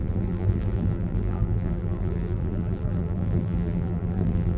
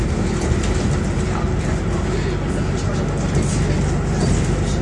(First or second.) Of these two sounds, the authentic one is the second